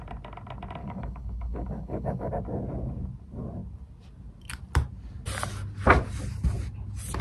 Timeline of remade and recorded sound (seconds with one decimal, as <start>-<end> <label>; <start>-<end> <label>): 0.0-0.8 recorded; 0.8-2.3 remade; 2.3-7.2 recorded